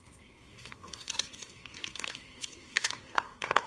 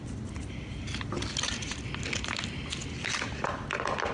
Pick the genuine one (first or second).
second